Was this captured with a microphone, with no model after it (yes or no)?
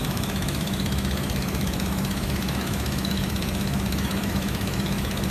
no